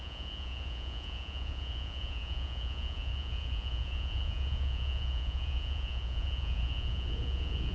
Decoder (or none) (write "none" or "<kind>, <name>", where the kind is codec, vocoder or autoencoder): vocoder, Vocos